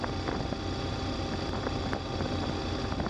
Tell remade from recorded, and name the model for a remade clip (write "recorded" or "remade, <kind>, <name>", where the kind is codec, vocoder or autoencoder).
recorded